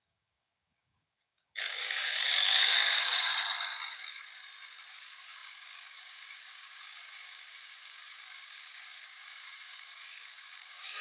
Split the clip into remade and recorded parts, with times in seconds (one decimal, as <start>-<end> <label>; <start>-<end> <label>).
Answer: 0.0-3.3 remade; 3.3-4.9 recorded; 4.9-11.0 remade